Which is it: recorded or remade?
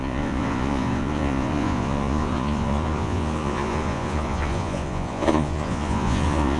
remade